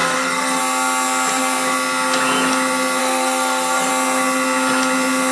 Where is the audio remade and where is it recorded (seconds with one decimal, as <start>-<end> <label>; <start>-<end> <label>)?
0.0-0.6 remade; 0.6-3.0 recorded; 3.0-3.9 remade; 3.9-5.3 recorded